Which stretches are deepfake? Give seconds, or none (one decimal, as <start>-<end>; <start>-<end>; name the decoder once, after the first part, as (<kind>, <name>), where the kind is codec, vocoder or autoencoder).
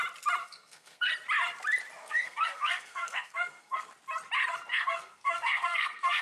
0.4-1.1 (codec, SNAC); 2.0-3.9; 4.7-6.2